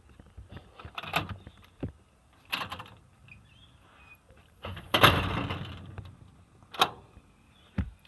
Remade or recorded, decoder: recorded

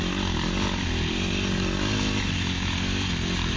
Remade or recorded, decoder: recorded